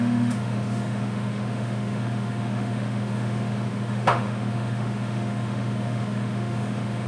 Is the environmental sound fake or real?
fake